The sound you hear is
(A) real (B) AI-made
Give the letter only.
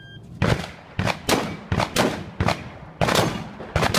A